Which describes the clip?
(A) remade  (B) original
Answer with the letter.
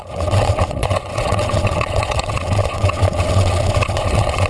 A